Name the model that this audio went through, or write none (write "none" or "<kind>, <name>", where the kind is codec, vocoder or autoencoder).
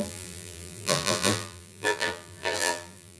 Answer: vocoder, BigVGAN v2